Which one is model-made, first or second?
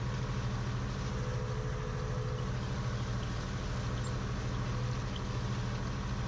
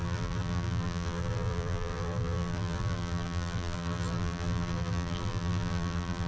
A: second